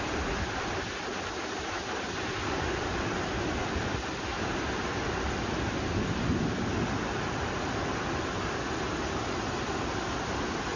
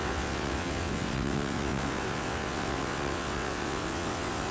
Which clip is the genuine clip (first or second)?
first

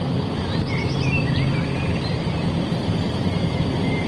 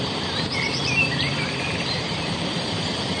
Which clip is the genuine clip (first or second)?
first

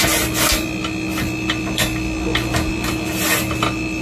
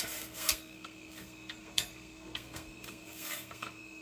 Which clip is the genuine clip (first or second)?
first